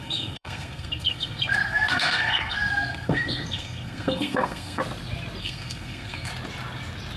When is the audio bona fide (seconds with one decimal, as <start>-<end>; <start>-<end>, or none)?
4.8-5.4; 6.3-7.2